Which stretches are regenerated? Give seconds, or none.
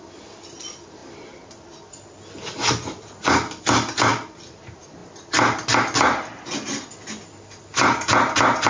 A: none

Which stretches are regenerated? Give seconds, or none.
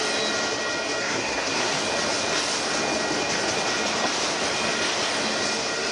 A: 1.0-1.7 (codec, SNAC)